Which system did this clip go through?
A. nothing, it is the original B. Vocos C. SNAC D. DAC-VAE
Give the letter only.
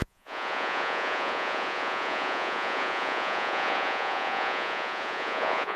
B